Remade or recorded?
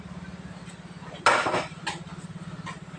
recorded